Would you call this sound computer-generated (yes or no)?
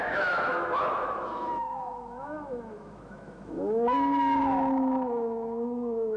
yes